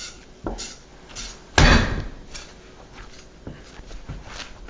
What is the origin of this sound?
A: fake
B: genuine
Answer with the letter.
B